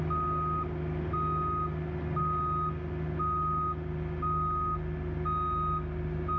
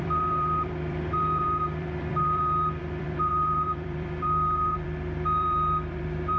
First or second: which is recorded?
first